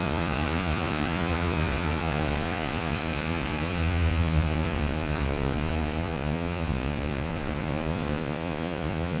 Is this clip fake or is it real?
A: fake